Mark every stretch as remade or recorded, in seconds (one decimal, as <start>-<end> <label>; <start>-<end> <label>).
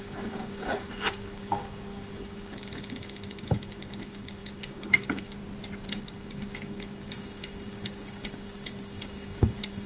0.0-5.4 remade; 5.4-5.9 recorded; 5.9-9.9 remade